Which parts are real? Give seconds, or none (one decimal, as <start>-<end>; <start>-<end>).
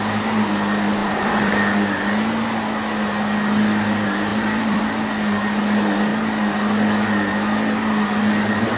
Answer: 0.0-1.0; 1.5-4.3; 4.8-8.8